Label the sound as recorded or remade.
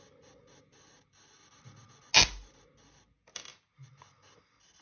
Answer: recorded